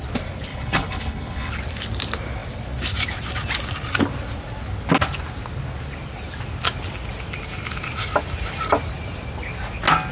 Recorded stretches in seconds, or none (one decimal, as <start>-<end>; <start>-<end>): 0.0-0.5; 1.5-10.1